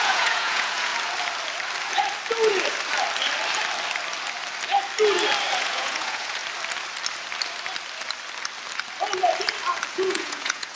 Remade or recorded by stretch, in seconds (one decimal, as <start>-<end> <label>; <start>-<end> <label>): 0.0-0.9 remade; 0.9-5.6 recorded; 5.6-6.4 remade; 6.4-9.9 recorded; 9.9-10.8 remade